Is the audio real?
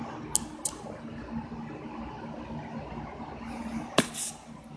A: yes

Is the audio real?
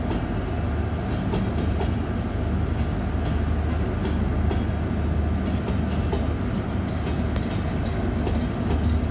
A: yes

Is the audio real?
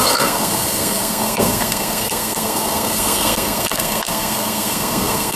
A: no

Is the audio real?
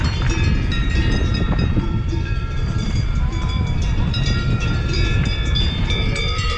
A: no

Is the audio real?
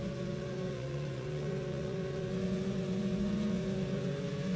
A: no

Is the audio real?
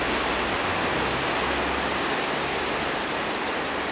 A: yes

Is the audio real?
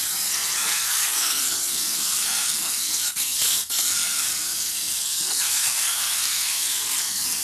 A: no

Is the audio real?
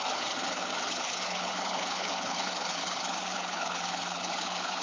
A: no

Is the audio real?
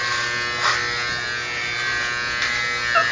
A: yes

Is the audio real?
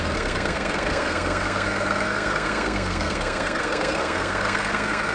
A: no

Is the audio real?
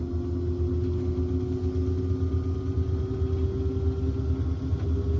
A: yes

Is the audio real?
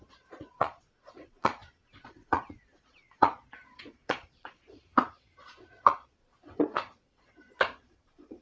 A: no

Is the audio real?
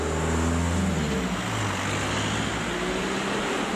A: yes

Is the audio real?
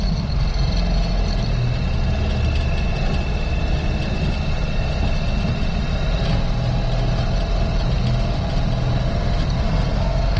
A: yes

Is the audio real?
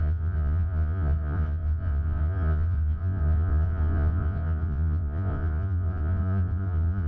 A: no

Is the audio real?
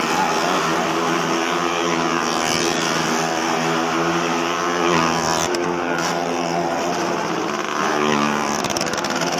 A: yes